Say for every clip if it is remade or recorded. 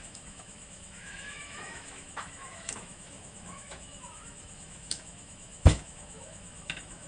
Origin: remade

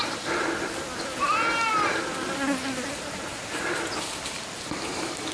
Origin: recorded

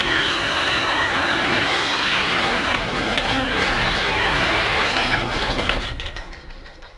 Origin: remade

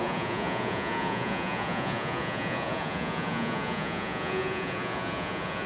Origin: remade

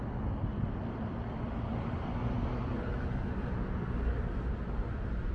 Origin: recorded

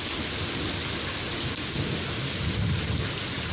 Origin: recorded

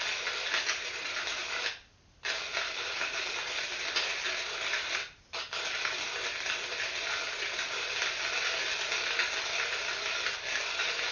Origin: recorded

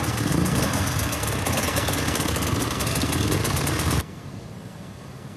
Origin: remade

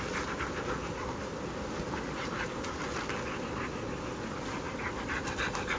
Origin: recorded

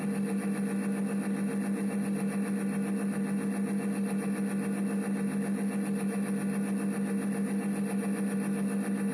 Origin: recorded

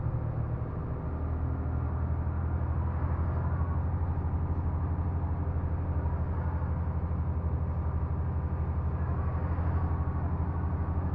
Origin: recorded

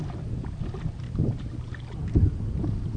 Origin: recorded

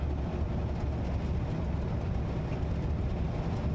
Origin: recorded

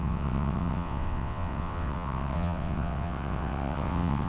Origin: remade